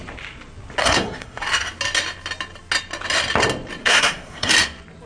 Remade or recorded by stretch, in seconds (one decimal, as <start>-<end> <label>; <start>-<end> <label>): 0.0-0.8 recorded; 0.8-1.4 remade; 1.4-3.8 recorded; 3.8-4.5 remade; 4.5-5.1 recorded